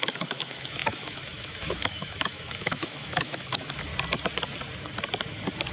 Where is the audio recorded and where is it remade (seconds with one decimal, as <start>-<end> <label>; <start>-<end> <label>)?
0.0-3.9 remade; 3.9-5.7 recorded